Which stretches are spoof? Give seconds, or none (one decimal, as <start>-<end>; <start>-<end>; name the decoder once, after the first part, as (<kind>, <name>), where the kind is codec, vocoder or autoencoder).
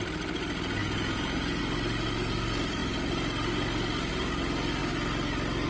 0.8-1.6 (vocoder, Vocos)